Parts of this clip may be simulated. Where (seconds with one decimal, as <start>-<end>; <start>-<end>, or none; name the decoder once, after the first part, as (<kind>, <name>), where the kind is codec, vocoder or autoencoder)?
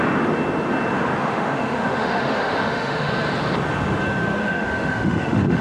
1.2-3.1 (autoencoder, DAC-VAE); 4.4-5.6